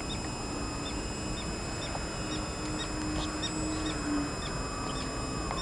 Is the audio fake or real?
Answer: real